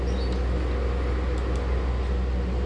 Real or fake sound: real